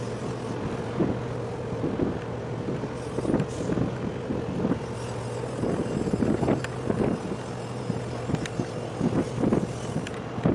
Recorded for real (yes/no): yes